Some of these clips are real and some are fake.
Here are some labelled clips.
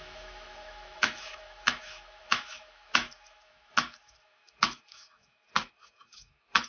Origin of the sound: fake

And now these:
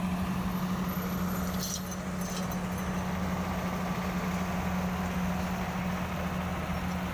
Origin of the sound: real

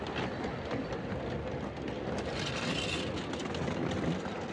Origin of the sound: real